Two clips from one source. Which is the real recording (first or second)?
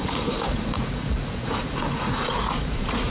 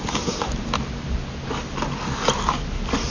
second